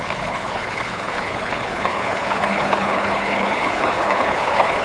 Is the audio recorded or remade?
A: remade